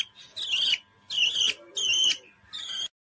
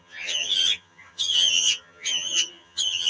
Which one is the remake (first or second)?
second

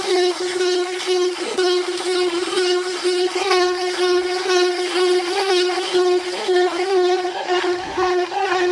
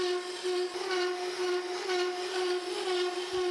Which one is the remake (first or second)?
first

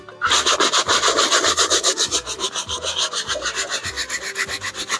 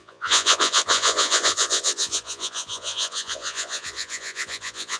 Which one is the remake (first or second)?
second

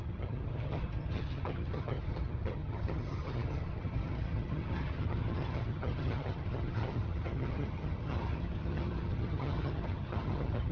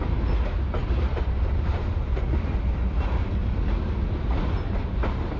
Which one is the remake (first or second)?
first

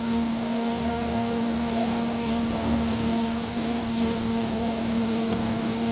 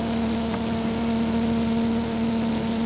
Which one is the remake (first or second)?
first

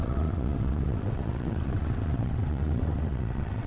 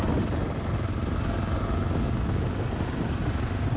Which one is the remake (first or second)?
first